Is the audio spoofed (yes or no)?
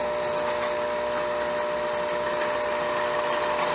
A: no